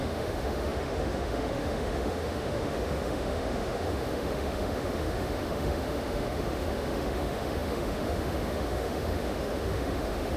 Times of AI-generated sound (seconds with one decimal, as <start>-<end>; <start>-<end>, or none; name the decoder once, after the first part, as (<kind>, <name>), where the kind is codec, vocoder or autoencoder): 0.0-10.4 (autoencoder, DAC-VAE)